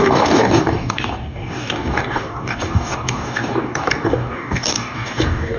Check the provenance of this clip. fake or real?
fake